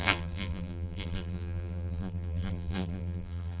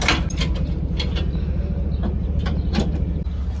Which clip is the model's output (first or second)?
first